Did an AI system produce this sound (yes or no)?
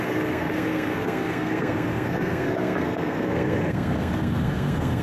yes